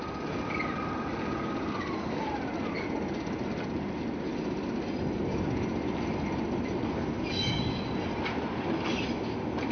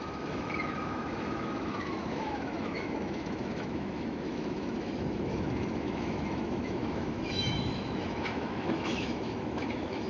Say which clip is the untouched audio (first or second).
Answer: first